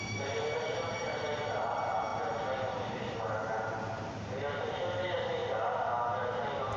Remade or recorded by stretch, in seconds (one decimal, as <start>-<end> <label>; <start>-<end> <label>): 0.0-5.4 remade; 5.4-6.2 recorded; 6.2-6.8 remade